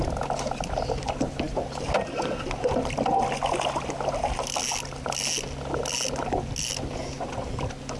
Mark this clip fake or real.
real